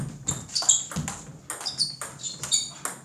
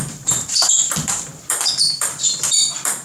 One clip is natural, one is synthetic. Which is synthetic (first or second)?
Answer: second